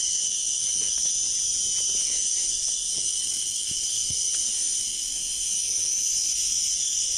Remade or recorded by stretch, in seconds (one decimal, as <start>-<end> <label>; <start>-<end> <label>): 0.0-1.1 remade; 1.1-2.0 recorded; 2.0-7.2 remade